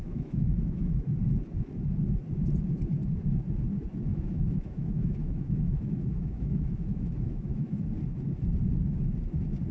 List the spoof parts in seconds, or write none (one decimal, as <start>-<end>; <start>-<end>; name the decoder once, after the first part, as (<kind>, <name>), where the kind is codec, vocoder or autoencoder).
0.0-1.1 (autoencoder, DAC-VAE); 4.1-7.8